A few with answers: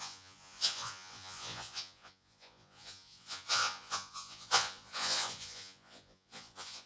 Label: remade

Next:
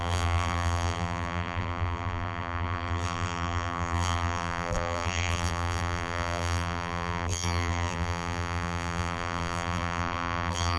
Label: remade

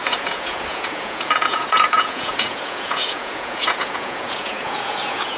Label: remade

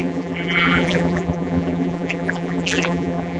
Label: remade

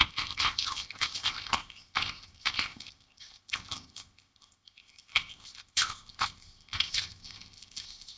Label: remade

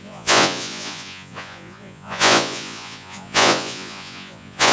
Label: remade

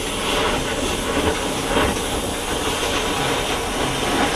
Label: recorded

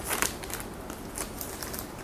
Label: recorded